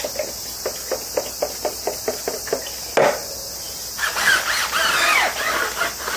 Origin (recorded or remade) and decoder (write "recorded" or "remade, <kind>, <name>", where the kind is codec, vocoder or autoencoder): recorded